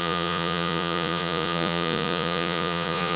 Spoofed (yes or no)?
yes